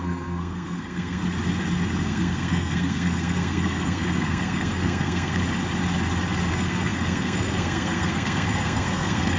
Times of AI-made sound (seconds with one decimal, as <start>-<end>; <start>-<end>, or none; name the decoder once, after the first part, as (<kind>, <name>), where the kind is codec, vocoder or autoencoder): 0.0-1.2 (codec, SNAC); 2.0-5.4; 6.5-9.4